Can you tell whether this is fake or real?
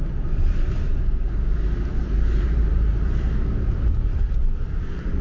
fake